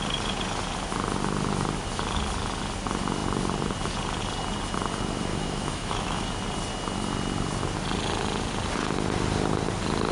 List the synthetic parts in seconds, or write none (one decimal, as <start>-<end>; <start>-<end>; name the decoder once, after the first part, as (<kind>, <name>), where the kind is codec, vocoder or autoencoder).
5.3-6.3 (autoencoder, DAC-VAE)